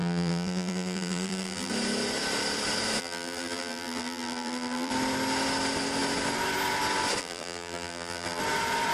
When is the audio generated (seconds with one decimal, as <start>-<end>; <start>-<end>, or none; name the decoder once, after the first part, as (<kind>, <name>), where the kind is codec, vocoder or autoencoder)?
0.0-1.7 (vocoder, BigVGAN v2); 3.0-4.9; 7.2-8.4

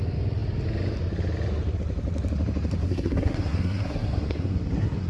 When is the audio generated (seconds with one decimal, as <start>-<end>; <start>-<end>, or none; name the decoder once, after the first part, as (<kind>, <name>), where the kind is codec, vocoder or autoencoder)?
2.8-5.1 (codec, SNAC)

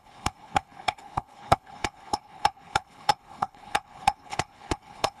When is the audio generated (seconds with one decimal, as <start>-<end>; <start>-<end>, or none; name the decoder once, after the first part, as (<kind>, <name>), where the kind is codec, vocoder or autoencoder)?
0.0-5.2 (codec, HILCodec)